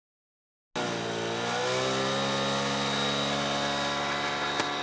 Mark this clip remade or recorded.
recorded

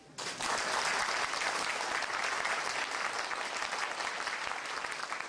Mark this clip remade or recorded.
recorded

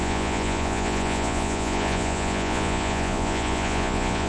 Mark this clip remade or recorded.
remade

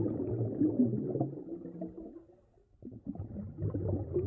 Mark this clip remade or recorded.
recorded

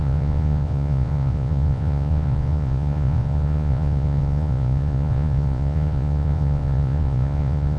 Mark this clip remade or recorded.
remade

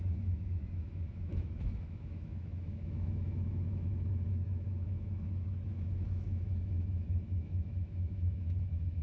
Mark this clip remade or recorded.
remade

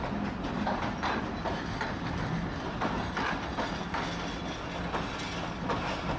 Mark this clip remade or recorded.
recorded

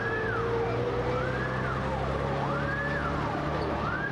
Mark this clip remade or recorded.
recorded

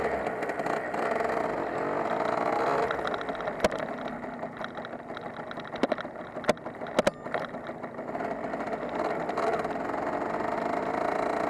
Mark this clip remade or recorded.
recorded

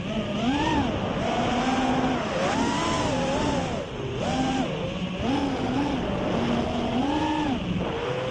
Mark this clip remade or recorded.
recorded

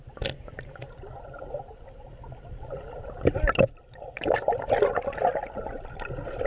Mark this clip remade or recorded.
recorded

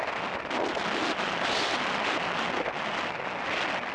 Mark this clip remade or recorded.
recorded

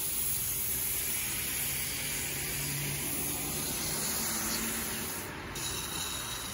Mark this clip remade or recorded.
recorded